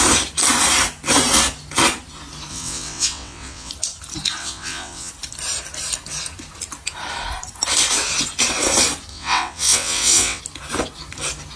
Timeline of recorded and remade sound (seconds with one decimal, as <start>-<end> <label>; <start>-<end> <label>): 0.0-2.5 recorded; 2.5-3.7 remade; 3.7-4.4 recorded; 4.4-5.1 remade; 5.1-9.1 recorded; 9.1-10.4 remade; 10.4-11.6 recorded